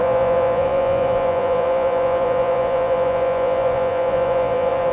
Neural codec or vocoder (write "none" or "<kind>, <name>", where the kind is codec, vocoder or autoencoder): vocoder, Vocos